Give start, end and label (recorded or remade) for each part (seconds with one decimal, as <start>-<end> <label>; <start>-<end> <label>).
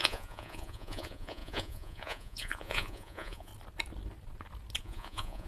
0.0-3.5 remade; 3.5-4.8 recorded; 4.8-5.5 remade